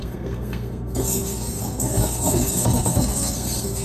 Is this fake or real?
fake